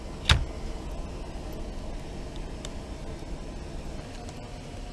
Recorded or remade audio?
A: recorded